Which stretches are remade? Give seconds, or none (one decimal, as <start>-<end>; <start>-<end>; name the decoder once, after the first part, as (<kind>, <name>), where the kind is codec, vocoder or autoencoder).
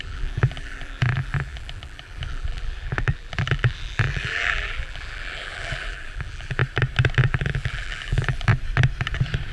0.0-6.6 (vocoder, BigVGAN v2); 7.2-8.5